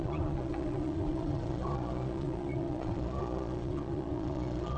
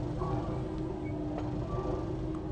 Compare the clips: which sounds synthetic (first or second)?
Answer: first